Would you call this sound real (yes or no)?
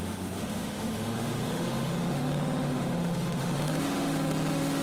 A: no